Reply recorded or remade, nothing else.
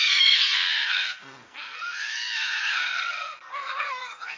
remade